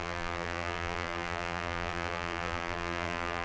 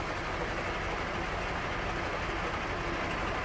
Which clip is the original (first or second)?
second